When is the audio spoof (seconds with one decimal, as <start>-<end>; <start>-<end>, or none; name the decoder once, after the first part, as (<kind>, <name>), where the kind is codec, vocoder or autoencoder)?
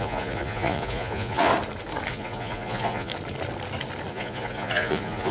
0.0-1.5 (vocoder, Vocos); 2.1-3.1; 4.1-5.3